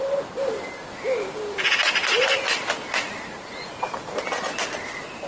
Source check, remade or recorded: recorded